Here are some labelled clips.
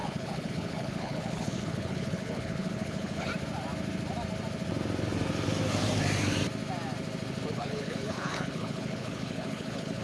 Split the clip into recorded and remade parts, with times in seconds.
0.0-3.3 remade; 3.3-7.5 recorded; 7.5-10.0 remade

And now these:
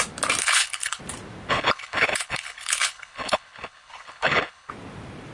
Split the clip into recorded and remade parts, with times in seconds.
0.0-0.4 recorded; 0.4-1.0 remade; 1.0-1.5 recorded; 1.5-4.7 remade; 4.7-5.3 recorded

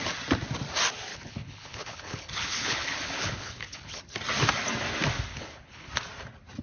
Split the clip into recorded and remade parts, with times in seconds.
0.0-1.1 recorded; 1.1-4.0 remade; 4.0-5.3 recorded; 5.3-5.9 remade; 5.9-6.6 recorded